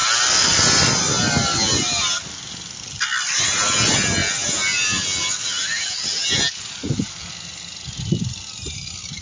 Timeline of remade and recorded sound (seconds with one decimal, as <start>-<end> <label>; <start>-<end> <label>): 0.0-9.2 recorded